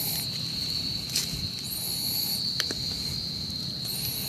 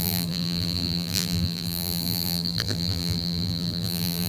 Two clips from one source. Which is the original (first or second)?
first